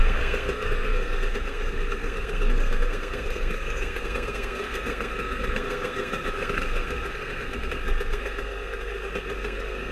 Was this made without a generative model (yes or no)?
no